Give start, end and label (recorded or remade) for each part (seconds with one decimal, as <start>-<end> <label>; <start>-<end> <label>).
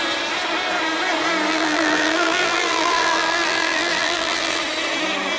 0.0-1.5 recorded; 1.5-4.6 remade; 4.6-5.4 recorded